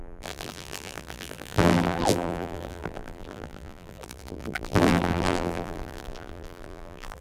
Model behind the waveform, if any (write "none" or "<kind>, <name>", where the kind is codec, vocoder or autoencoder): vocoder, BigVGAN v2